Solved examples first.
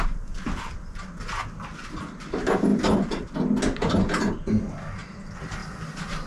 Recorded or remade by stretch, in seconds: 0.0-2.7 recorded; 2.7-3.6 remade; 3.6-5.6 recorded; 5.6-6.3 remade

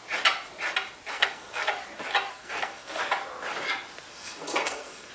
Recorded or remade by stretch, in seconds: 0.0-1.1 recorded; 1.1-1.7 remade; 1.7-2.3 recorded; 2.3-3.0 remade; 3.0-4.1 recorded; 4.1-5.1 remade

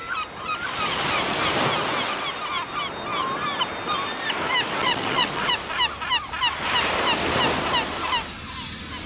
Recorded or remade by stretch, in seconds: 0.0-4.8 recorded; 4.8-5.5 remade; 5.5-9.1 recorded

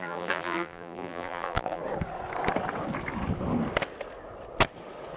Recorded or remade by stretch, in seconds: 0.0-1.8 remade; 1.8-5.2 recorded

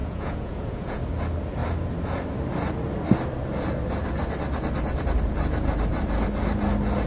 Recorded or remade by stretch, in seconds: 0.0-1.0 remade; 1.0-7.1 recorded

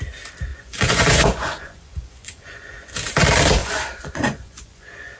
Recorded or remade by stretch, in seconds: 0.0-0.5 recorded; 0.5-2.9 remade; 2.9-3.6 recorded; 3.6-5.2 remade

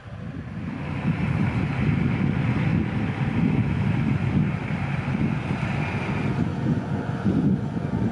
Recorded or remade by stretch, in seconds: 0.0-6.5 recorded; 6.5-8.1 remade